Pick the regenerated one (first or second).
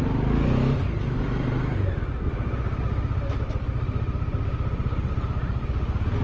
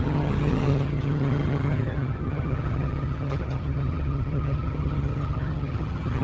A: second